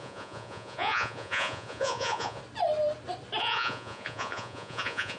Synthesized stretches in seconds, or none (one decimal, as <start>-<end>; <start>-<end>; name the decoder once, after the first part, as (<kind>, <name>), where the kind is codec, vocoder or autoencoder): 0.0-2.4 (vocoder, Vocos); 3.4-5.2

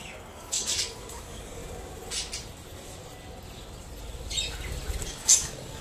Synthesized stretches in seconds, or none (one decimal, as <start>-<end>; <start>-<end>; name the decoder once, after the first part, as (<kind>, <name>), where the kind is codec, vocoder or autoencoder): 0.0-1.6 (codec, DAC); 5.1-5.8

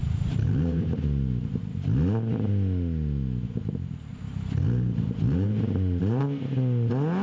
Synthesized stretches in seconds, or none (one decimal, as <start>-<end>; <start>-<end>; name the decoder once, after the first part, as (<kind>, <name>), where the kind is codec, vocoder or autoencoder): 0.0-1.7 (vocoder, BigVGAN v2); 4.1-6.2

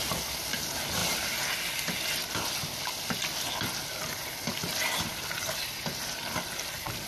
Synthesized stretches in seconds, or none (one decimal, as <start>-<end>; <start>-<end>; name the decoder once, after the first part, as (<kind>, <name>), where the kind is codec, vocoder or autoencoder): none